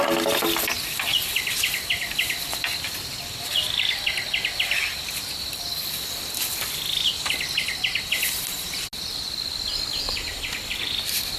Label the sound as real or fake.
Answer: real